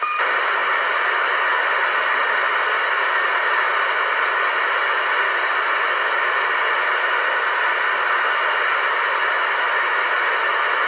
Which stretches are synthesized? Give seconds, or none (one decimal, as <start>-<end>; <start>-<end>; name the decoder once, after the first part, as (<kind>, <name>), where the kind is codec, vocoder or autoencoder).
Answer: none

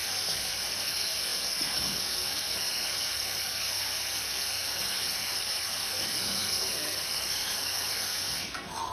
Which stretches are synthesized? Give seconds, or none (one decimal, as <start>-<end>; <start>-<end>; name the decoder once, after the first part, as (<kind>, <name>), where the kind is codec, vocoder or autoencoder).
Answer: 0.0-8.9 (codec, SNAC)

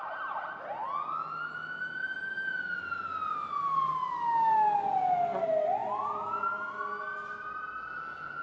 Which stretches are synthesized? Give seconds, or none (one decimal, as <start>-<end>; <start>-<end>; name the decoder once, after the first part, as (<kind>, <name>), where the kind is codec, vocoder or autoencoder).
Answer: 5.8-6.5 (vocoder, BigVGAN v2)

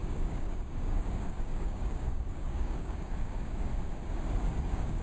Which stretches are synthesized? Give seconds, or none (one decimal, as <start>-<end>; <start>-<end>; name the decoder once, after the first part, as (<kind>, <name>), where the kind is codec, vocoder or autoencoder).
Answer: 0.0-3.7 (codec, DAC); 4.6-5.0

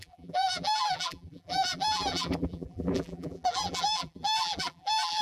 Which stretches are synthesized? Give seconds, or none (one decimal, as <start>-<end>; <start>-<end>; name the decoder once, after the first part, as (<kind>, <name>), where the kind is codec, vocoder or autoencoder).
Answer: 0.0-5.2 (vocoder, BigVGAN v2)